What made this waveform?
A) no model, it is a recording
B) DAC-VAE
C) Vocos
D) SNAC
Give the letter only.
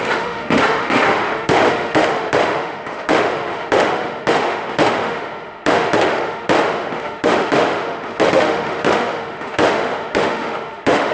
B